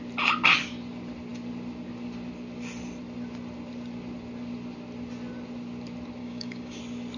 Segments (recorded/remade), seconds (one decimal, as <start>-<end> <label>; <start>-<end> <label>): 0.0-6.2 recorded; 6.2-6.8 remade; 6.8-7.2 recorded